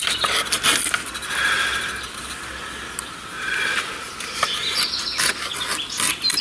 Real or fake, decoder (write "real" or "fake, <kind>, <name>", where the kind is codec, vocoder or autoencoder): real